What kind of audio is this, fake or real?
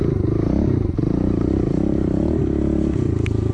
real